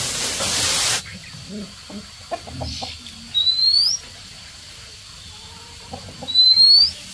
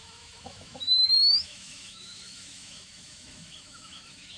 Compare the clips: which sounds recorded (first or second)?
first